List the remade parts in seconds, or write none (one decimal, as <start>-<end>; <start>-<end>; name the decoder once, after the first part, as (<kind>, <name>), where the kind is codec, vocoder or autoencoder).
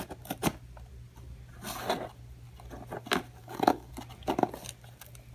3.4-3.9 (codec, DAC)